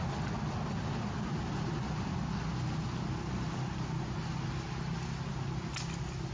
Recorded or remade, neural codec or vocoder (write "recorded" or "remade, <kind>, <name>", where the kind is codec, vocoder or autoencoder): recorded